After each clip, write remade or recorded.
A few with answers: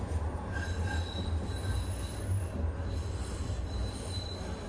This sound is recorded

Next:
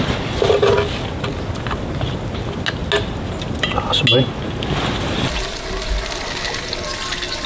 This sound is recorded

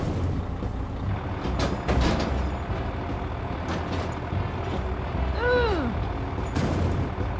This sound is recorded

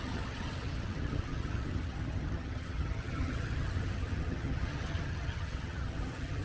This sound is remade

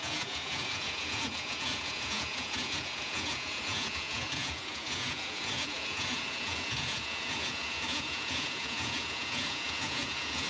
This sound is remade